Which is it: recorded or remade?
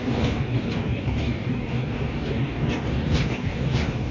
remade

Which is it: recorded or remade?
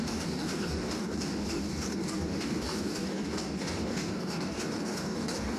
remade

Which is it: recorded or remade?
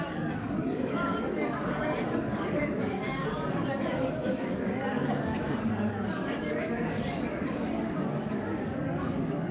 remade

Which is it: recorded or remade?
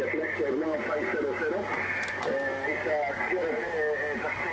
recorded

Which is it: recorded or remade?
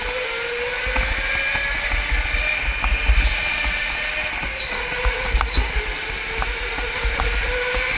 recorded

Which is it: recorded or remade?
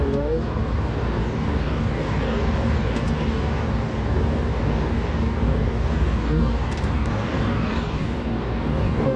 remade